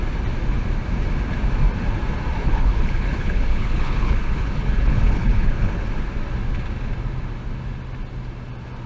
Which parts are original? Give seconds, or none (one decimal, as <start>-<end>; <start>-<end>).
0.0-2.4; 5.9-8.9